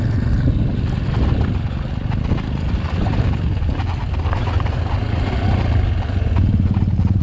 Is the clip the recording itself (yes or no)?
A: yes